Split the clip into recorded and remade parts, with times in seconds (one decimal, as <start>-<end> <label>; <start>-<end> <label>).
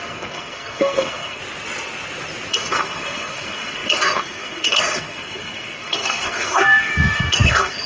0.0-1.4 remade; 1.4-2.5 recorded; 2.5-7.9 remade